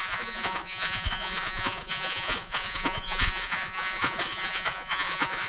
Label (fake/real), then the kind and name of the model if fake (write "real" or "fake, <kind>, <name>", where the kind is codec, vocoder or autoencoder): fake, vocoder, Vocos